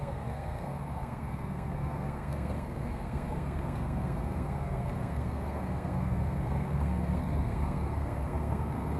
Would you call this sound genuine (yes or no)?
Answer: no